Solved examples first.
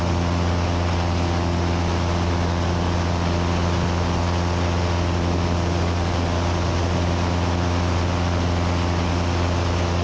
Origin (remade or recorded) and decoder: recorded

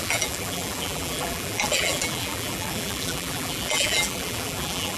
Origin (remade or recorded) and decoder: remade, vocoder, BigVGAN v2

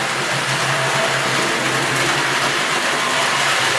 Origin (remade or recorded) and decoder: recorded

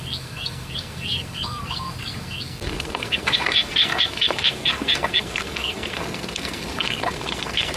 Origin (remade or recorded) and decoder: remade, codec, SNAC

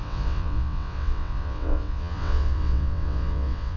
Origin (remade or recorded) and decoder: remade, vocoder, WaveNeXt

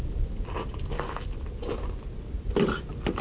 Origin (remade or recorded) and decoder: recorded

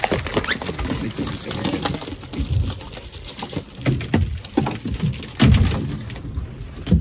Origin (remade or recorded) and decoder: recorded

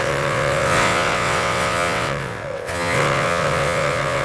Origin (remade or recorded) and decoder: remade, vocoder, WaveNeXt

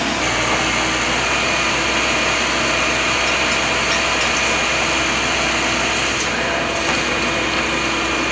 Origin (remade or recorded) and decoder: recorded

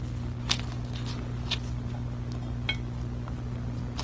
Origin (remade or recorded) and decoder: recorded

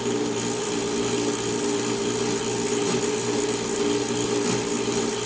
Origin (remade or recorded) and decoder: recorded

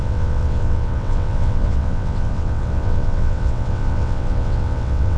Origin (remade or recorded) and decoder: remade, vocoder, WaveNeXt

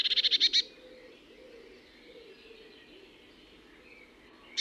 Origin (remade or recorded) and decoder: recorded